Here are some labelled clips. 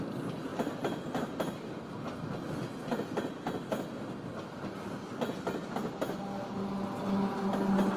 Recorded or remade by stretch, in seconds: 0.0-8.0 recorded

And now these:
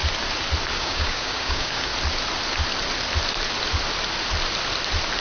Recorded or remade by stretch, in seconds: 0.0-0.7 recorded; 0.7-1.9 remade; 1.9-5.2 recorded

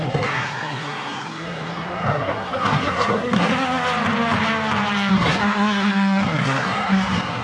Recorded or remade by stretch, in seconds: 0.0-3.5 remade; 3.5-5.1 recorded; 5.1-7.4 remade

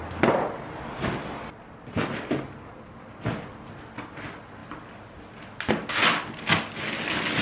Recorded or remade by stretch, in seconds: 0.0-7.4 recorded

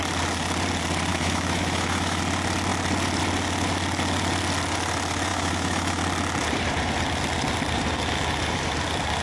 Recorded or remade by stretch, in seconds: 0.0-1.1 recorded; 1.1-2.2 remade; 2.2-5.3 recorded; 5.3-6.0 remade; 6.0-9.2 recorded

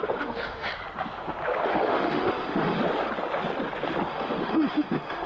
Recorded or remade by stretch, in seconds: 0.0-0.7 remade; 0.7-1.7 recorded; 1.7-2.8 remade; 2.8-4.1 recorded; 4.1-5.3 remade